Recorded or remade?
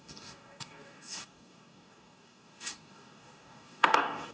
remade